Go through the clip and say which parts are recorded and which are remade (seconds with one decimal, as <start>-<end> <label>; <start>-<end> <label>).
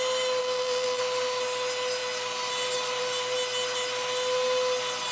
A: 0.0-0.4 recorded; 0.4-1.0 remade; 1.0-5.1 recorded